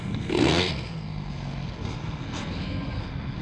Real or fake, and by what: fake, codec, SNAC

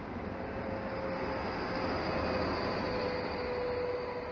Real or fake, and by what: real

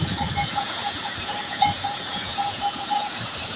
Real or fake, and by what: fake, vocoder, Vocos